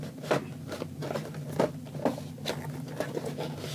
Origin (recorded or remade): recorded